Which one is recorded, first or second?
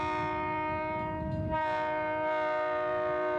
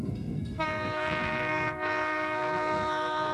first